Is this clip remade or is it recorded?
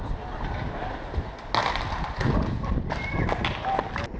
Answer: recorded